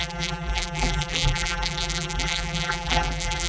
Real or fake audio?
fake